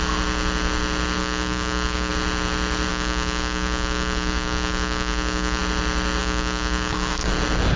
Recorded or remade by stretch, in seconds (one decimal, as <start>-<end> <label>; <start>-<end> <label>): 0.0-1.2 recorded; 1.2-2.1 remade; 2.1-2.9 recorded; 2.9-5.6 remade; 5.6-6.2 recorded; 6.2-7.3 remade; 7.3-7.8 recorded